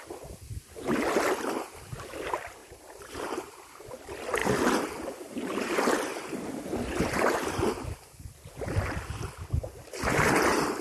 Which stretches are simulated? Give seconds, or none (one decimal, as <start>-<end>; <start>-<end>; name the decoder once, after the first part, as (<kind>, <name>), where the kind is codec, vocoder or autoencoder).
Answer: 2.6-3.9 (vocoder, BigVGAN v2); 4.4-5.8

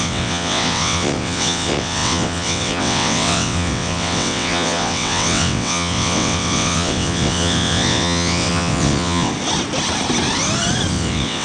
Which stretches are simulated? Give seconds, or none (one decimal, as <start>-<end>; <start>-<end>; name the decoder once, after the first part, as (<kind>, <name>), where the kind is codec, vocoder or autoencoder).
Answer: 0.0-9.3 (vocoder, WaveNeXt); 10.9-11.4

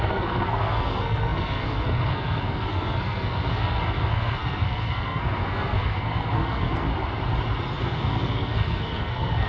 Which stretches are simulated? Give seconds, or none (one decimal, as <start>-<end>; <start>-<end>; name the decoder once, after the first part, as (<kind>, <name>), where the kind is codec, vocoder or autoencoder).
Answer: 0.0-6.9 (codec, SNAC); 7.8-9.5

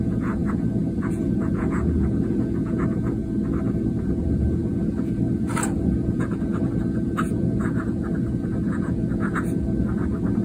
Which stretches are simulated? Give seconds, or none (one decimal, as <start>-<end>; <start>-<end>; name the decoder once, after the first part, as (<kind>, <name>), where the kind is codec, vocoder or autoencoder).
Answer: 0.0-3.2 (vocoder, Vocos); 4.0-10.4

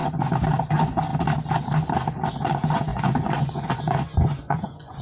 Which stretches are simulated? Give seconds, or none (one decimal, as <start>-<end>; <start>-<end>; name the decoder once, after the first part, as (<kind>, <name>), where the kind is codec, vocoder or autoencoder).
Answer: 0.7-1.1 (vocoder, Vocos); 2.4-5.0

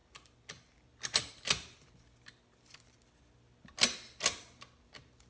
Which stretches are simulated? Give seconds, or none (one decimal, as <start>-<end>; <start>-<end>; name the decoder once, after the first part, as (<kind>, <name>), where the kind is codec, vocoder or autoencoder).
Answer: none

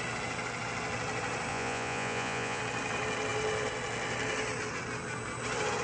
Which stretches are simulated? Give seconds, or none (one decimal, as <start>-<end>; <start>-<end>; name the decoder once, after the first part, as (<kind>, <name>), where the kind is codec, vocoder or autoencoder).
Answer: 1.5-2.6 (vocoder, Vocos)

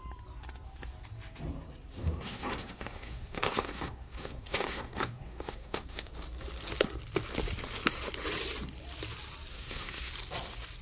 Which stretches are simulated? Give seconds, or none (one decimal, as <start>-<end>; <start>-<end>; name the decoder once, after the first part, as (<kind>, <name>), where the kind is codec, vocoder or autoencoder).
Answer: 2.0-6.1 (codec, SNAC); 9.5-10.1